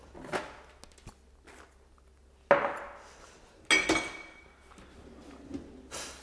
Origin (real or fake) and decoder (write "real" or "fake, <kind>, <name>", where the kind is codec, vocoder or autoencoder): real